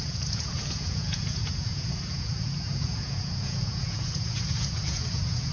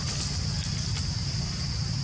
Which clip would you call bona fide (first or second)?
second